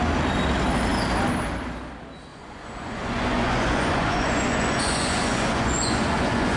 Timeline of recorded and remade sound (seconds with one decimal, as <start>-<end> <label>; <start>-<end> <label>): 0.0-2.3 recorded; 2.3-6.6 remade